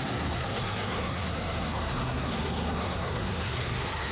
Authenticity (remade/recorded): remade